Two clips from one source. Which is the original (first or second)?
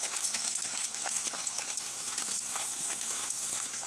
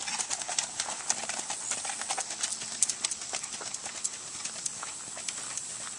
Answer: second